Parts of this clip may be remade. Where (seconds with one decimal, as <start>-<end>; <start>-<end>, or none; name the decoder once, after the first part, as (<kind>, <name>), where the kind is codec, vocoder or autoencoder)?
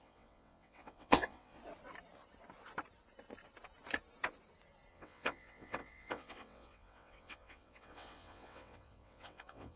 0.0-1.6 (vocoder, WaveNeXt); 4.9-9.8